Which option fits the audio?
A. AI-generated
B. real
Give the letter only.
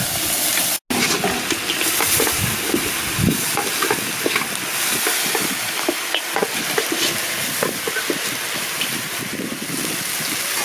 B